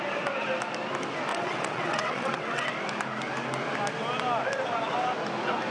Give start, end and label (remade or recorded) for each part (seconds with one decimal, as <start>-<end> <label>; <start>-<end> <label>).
0.0-1.3 recorded; 1.3-2.7 remade; 2.7-5.7 recorded